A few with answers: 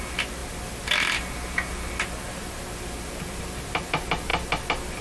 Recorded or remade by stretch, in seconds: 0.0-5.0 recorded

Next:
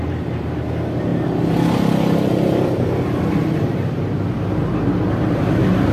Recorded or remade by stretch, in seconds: 0.0-1.1 remade; 1.1-2.3 recorded; 2.3-5.9 remade